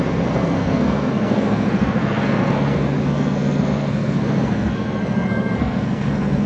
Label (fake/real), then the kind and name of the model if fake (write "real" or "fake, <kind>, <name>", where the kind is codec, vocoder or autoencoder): fake, codec, SNAC